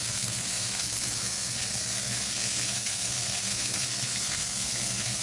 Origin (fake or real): fake